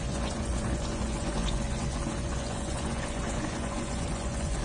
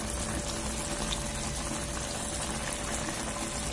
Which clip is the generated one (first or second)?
first